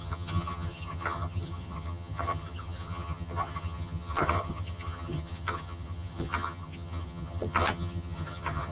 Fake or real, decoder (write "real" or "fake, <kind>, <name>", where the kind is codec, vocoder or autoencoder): fake, vocoder, HiFi-GAN